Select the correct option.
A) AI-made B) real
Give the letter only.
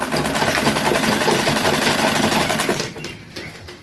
B